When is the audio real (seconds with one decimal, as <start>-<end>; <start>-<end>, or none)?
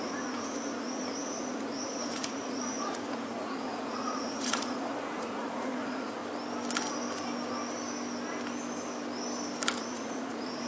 6.2-9.8